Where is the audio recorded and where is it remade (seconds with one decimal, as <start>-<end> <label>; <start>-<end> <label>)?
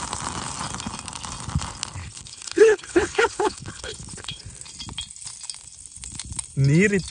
0.0-2.0 recorded; 2.0-4.4 remade; 4.4-7.1 recorded